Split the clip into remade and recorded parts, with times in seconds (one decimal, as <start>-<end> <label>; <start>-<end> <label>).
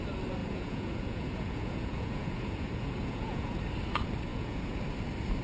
0.0-0.4 recorded; 0.4-3.6 remade; 3.6-4.3 recorded; 4.3-4.8 remade; 4.8-5.4 recorded